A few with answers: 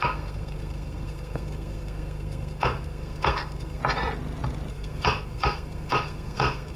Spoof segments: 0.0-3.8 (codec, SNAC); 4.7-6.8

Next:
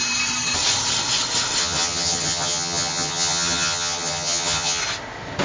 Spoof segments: 1.6-4.8 (vocoder, HiFi-GAN)

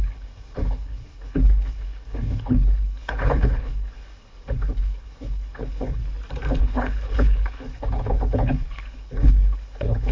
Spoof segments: 0.0-6.0 (codec, HILCodec); 6.6-10.1

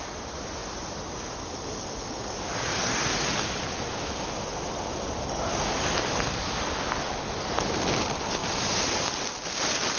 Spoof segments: 8.4-9.0 (vocoder, BigVGAN v2)

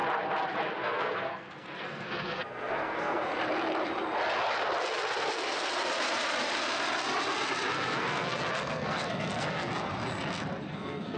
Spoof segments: 0.8-3.3 (codec, SNAC); 7.7-9.7; 10.7-11.2

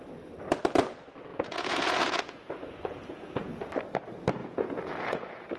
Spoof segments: 1.3-3.6 (vocoder, Vocos); 4.4-5.6